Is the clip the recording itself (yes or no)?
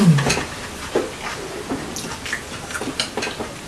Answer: yes